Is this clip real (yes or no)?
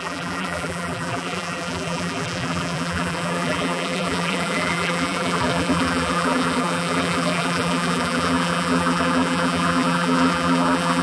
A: no